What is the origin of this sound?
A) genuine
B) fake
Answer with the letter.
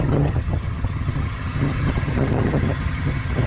B